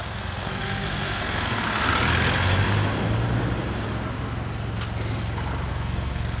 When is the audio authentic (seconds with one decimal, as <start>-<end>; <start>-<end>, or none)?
1.9-5.7